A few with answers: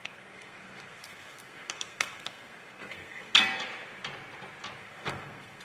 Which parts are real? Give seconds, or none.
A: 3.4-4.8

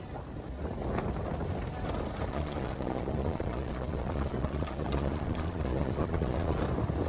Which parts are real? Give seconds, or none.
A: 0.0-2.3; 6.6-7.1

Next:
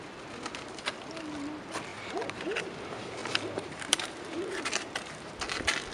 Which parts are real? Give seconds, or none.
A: 0.0-1.9; 2.7-3.2; 5.4-5.9

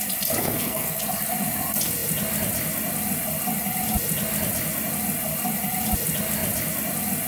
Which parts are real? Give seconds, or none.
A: 0.0-0.4; 1.0-7.3

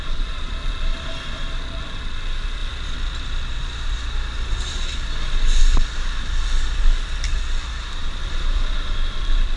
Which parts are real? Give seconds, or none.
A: none

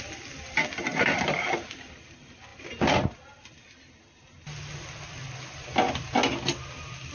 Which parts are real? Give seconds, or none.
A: 2.5-7.1